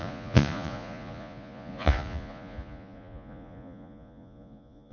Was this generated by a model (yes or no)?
yes